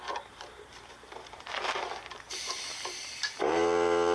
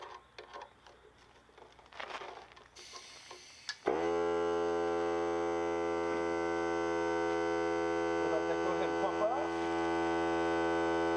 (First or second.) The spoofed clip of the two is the first